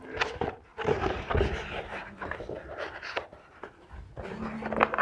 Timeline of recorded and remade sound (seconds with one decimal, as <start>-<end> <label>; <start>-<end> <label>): 0.0-0.7 recorded; 0.7-3.7 remade; 3.7-5.0 recorded